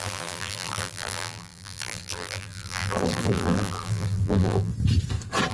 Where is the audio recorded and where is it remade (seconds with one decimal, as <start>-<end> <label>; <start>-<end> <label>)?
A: 0.0-4.7 remade; 4.7-5.5 recorded